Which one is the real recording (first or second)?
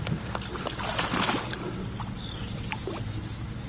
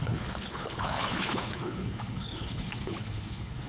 first